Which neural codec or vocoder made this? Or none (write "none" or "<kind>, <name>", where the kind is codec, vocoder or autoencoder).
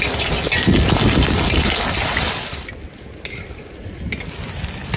none